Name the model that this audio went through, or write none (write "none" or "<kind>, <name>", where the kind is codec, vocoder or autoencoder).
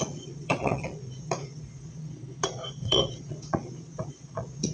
vocoder, Vocos